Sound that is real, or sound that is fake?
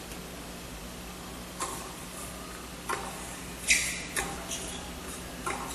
real